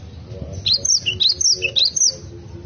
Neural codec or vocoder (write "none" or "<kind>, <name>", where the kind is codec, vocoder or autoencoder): none